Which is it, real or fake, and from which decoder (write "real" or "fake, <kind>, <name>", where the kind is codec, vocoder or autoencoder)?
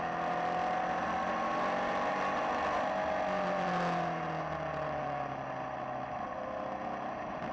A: real